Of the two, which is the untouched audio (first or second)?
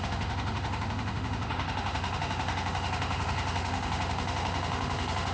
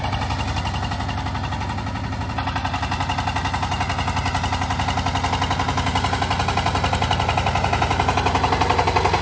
second